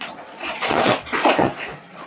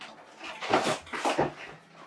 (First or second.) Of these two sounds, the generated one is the first